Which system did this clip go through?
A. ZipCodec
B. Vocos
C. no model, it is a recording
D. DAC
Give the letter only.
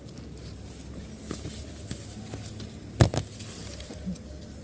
C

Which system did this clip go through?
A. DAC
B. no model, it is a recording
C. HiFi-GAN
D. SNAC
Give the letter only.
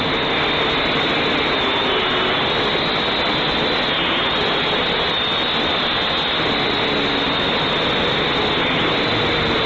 B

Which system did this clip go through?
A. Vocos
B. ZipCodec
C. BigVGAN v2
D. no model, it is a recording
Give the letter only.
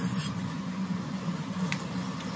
A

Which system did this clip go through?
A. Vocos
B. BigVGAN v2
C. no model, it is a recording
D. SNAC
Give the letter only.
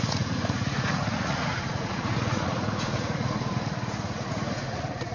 A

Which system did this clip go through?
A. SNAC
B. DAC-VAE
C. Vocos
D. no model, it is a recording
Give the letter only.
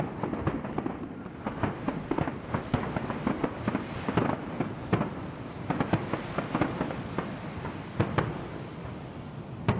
D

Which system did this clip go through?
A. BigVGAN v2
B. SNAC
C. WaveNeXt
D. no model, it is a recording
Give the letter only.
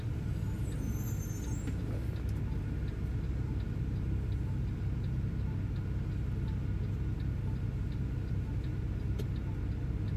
D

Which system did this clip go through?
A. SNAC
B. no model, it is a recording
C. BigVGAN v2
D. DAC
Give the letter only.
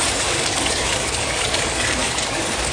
D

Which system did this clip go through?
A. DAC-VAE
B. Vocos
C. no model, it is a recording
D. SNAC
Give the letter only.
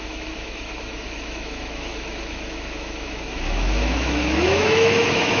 A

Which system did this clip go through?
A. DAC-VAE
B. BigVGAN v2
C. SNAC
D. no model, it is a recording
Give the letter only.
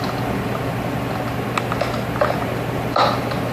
D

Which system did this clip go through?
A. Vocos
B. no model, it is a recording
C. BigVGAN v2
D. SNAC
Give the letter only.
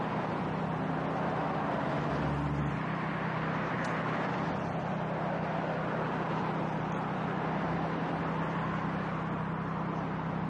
B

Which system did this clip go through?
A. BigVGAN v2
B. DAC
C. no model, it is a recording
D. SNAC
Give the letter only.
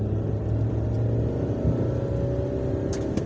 C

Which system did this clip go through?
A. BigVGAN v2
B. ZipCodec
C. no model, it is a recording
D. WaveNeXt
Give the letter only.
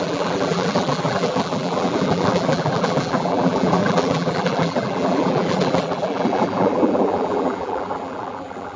A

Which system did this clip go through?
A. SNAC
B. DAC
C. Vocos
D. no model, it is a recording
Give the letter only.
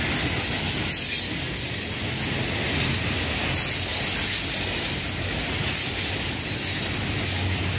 D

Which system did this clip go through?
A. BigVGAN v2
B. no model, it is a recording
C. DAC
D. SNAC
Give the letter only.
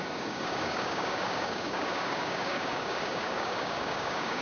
C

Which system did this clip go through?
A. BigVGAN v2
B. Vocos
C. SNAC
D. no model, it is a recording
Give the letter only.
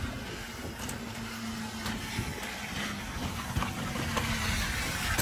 D